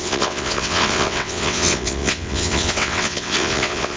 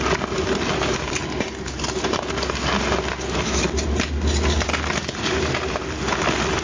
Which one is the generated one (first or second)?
first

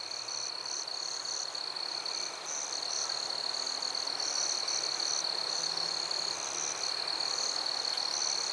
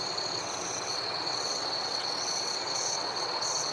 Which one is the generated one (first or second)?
second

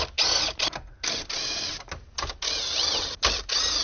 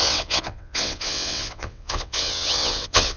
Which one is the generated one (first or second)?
second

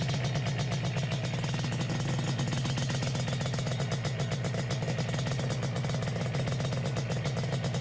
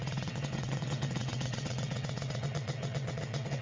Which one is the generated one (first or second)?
second